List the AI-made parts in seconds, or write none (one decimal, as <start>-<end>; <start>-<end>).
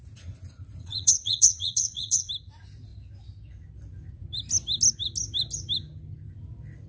0.8-2.3